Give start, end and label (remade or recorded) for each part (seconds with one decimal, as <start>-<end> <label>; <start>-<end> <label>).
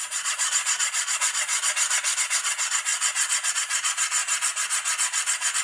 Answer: 0.0-1.5 remade; 1.5-2.2 recorded; 2.2-2.9 remade; 2.9-3.5 recorded; 3.5-4.2 remade; 4.2-5.6 recorded